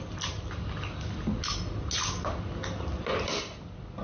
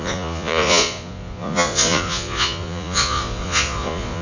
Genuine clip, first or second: first